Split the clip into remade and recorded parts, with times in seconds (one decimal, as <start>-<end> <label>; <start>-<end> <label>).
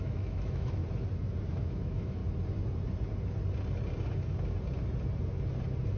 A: 0.0-0.8 remade; 0.8-1.5 recorded; 1.5-2.2 remade; 2.2-6.0 recorded